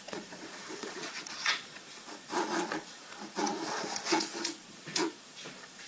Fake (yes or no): yes